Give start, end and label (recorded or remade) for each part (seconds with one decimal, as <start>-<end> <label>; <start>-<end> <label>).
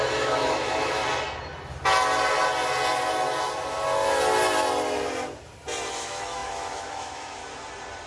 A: 0.0-1.0 remade; 1.0-5.9 recorded; 5.9-7.4 remade; 7.4-8.1 recorded